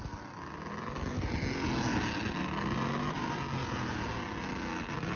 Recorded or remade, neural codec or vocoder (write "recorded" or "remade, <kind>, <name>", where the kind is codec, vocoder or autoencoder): recorded